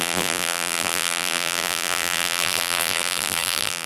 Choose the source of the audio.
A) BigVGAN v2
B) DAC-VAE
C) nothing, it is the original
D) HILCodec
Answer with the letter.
A